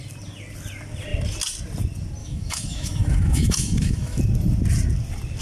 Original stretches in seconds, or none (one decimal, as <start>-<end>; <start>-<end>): 0.0-2.2; 4.2-5.4

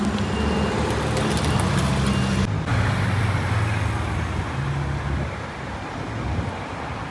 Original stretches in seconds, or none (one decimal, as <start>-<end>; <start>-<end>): 0.0-7.1

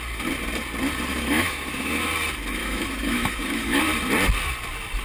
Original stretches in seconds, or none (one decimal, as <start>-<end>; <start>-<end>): 0.0-1.1; 2.1-2.6; 3.8-5.0

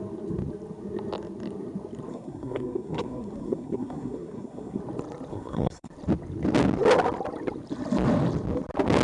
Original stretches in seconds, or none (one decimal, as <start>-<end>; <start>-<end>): 0.0-2.1; 4.8-5.3; 5.9-9.0

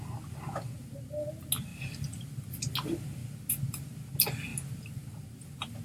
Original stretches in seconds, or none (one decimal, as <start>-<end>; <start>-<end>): 0.0-5.8

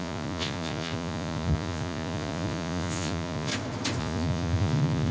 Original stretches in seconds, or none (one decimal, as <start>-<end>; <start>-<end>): 3.5-4.0